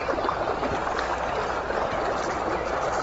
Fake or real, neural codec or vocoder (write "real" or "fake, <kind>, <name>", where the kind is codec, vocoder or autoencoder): real